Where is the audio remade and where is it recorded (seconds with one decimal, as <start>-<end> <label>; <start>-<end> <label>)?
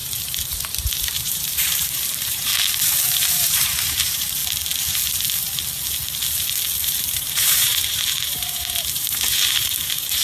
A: 0.0-2.5 remade; 2.5-3.3 recorded; 3.3-4.4 remade; 4.4-6.8 recorded; 6.8-10.2 remade